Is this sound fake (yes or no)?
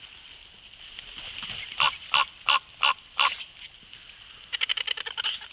no